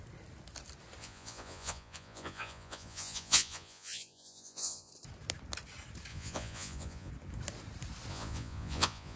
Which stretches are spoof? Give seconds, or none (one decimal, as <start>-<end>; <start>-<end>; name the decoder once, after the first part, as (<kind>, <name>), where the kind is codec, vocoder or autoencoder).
1.0-4.9 (vocoder, Vocos); 6.1-7.1; 8.1-9.2